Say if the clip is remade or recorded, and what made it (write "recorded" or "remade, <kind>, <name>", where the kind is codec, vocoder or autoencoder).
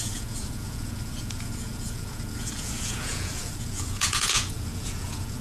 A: remade, vocoder, Vocos